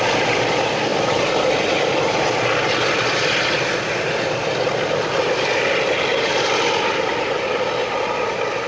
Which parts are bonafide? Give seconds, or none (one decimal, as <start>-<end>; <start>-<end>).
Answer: 0.0-8.7